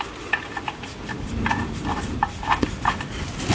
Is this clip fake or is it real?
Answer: real